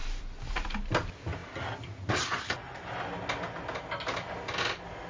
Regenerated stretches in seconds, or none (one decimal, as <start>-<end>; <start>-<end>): none